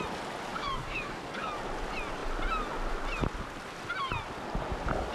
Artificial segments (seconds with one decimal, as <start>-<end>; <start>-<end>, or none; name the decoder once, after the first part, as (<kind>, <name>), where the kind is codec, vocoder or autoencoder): 0.5-1.5 (codec, DAC)